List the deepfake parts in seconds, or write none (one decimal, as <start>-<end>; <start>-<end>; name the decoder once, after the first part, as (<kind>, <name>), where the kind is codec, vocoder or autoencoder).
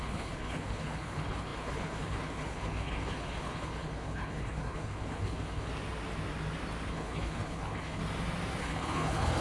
0.0-5.7 (codec, HILCodec); 6.9-8.0; 8.6-9.4